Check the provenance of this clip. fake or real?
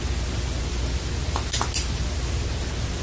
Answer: real